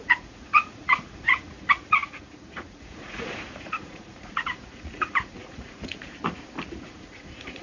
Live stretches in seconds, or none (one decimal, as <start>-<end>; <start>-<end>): 6.2-6.8